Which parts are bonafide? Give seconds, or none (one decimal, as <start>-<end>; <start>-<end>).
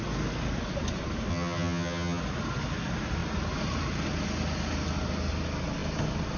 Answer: 0.0-1.3; 2.2-6.4